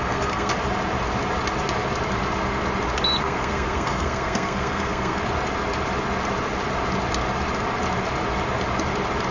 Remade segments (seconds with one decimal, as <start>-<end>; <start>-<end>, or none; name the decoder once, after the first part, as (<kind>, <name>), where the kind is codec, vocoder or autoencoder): 0.0-0.5 (codec, SNAC); 3.2-5.2